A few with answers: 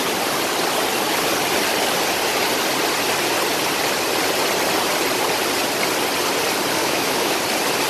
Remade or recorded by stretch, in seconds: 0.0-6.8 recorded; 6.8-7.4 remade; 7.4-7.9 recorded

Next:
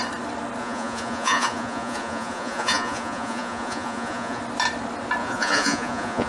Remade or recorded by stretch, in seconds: 0.0-0.6 recorded; 0.6-4.4 remade; 4.4-5.2 recorded; 5.2-6.3 remade

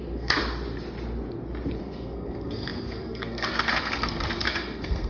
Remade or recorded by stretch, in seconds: 0.0-0.4 remade; 0.4-1.8 recorded; 1.8-5.1 remade

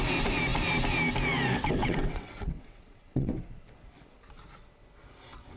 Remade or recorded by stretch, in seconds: 0.0-1.8 recorded; 1.8-3.3 remade; 3.3-5.6 recorded

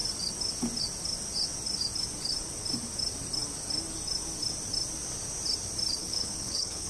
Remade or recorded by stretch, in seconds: 0.0-6.0 recorded; 6.0-6.9 remade

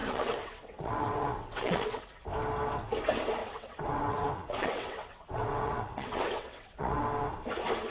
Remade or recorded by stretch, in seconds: 0.0-2.0 remade; 2.0-3.4 recorded; 3.4-7.0 remade; 7.0-7.9 recorded